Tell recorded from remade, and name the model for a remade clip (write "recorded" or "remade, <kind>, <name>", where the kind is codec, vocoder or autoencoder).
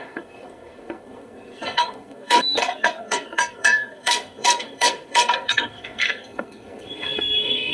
remade, codec, SNAC